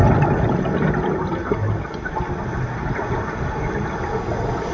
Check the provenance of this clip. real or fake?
real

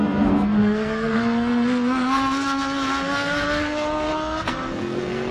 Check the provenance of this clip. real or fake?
fake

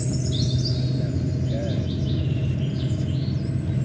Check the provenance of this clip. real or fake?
real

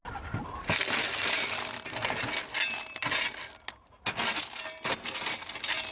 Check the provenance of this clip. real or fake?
real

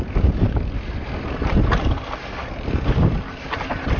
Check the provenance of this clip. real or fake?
real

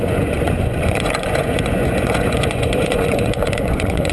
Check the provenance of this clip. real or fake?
fake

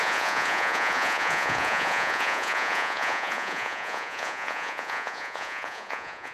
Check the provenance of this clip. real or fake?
fake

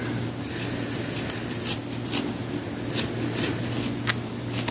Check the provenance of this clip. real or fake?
fake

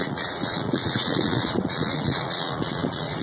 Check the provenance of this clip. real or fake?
fake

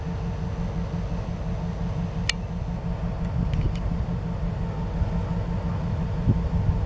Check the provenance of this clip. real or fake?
real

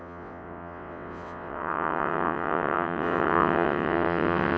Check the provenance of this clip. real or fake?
fake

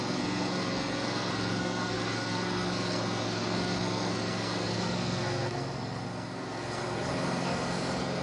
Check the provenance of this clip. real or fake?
fake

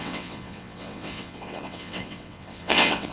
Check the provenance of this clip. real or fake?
fake